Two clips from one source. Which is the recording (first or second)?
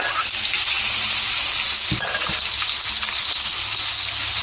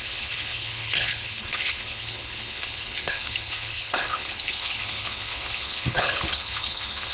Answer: first